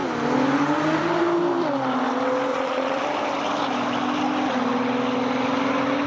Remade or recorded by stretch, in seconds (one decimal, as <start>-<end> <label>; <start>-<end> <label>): 0.0-2.5 recorded; 2.5-3.0 remade; 3.0-6.1 recorded